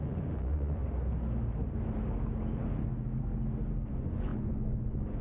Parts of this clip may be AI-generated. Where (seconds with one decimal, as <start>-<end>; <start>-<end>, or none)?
0.0-0.8; 3.9-5.2